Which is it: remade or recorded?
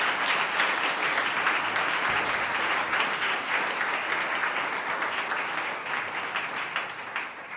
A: recorded